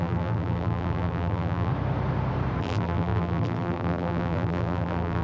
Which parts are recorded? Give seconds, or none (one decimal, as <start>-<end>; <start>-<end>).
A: 1.7-2.6